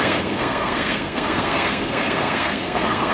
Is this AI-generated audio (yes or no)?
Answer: yes